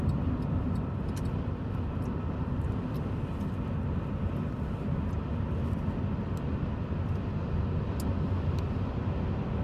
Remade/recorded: recorded